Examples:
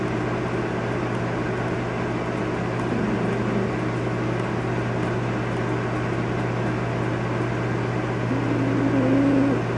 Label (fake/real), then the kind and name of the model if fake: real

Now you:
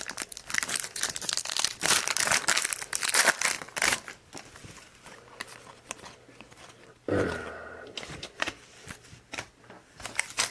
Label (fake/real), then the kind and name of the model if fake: fake, vocoder, BigVGAN v2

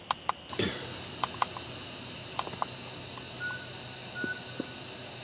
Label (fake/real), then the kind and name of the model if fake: real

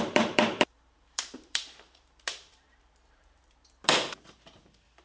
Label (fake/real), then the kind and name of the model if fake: fake, vocoder, BigVGAN v2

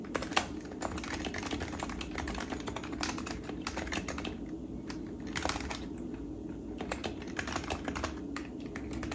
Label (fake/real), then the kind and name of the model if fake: real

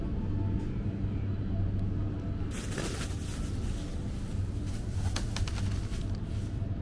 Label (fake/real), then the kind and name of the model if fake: real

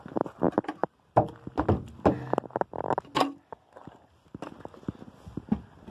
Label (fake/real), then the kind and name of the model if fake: real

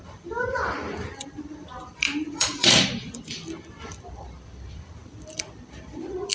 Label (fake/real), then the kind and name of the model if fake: fake, vocoder, BigVGAN v2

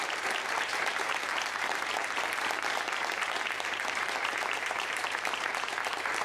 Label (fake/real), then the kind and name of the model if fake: fake, vocoder, BigVGAN v2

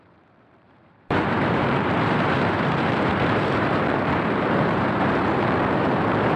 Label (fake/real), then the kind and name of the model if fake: fake, vocoder, BigVGAN v2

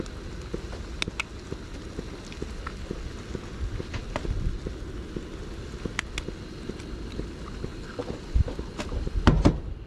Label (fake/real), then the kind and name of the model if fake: real